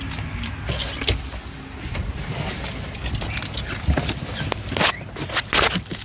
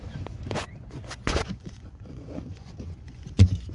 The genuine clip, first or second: first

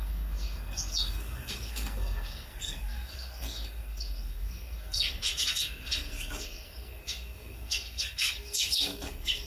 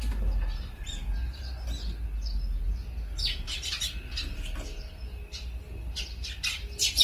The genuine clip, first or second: second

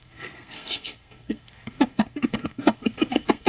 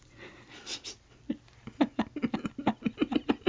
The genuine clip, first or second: second